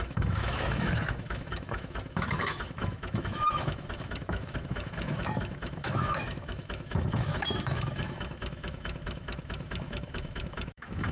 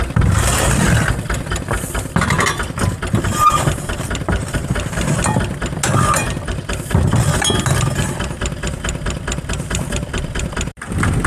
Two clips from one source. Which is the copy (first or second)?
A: first